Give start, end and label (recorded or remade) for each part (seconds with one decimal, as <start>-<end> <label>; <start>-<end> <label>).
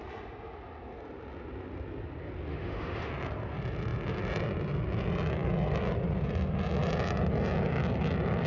0.0-2.5 recorded; 2.5-3.1 remade; 3.1-8.5 recorded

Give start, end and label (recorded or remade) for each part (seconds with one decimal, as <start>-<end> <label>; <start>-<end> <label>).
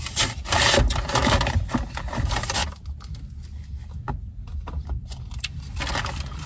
0.0-6.5 recorded